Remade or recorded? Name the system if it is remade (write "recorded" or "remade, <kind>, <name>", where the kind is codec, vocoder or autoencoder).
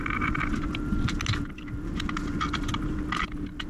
recorded